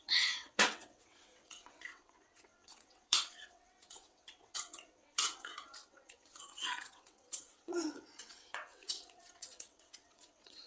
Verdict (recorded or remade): remade